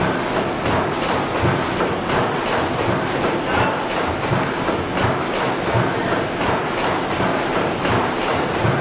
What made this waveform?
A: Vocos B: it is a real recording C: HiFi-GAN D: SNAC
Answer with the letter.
B